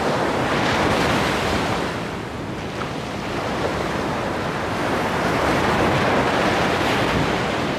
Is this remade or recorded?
recorded